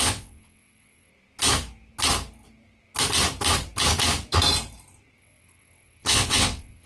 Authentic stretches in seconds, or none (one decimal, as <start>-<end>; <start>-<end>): 1.1-5.2